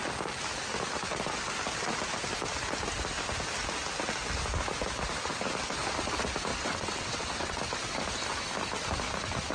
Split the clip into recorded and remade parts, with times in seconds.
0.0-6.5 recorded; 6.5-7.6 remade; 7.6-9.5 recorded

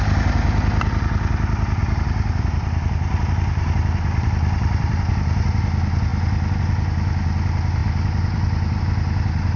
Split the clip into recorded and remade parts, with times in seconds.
0.0-1.8 recorded; 1.8-5.1 remade; 5.1-7.8 recorded; 7.8-8.8 remade; 8.8-9.6 recorded

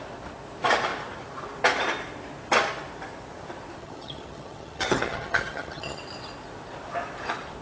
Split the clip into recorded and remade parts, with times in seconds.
0.0-3.8 recorded; 3.8-6.0 remade; 6.0-7.6 recorded

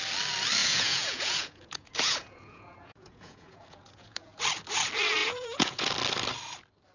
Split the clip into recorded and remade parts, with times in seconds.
0.0-0.6 recorded; 0.6-4.4 remade; 4.4-5.2 recorded; 5.2-5.9 remade; 5.9-6.9 recorded

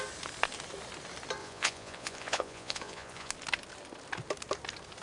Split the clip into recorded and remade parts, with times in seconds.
0.0-1.4 recorded; 1.4-3.3 remade; 3.3-5.0 recorded

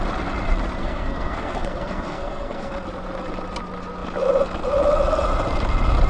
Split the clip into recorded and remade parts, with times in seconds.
0.0-0.8 recorded; 0.8-2.7 remade; 2.7-6.1 recorded